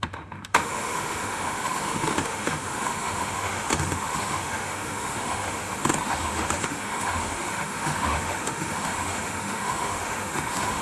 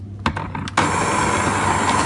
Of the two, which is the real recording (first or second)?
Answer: second